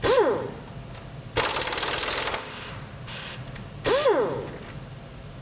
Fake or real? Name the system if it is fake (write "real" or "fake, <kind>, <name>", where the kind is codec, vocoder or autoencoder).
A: real